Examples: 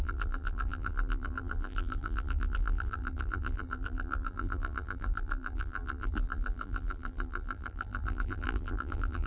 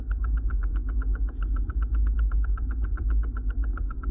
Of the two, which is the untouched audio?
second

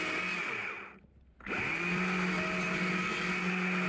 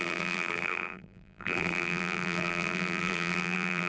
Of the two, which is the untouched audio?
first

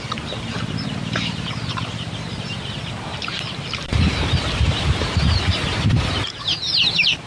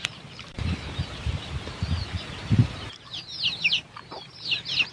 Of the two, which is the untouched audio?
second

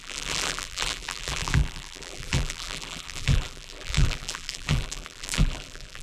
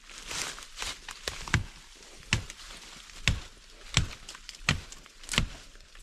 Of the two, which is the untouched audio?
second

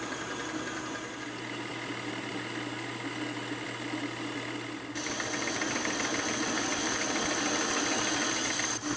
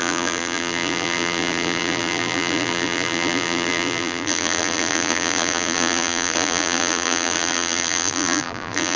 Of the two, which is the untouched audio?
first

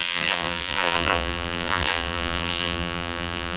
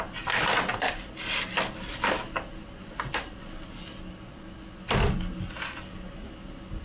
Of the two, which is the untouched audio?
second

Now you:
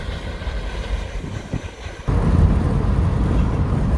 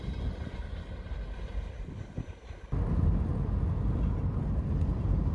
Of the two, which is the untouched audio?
second